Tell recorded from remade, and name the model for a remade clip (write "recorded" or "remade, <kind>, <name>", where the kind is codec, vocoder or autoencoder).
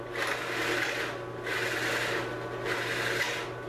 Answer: recorded